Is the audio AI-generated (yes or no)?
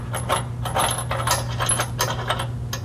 no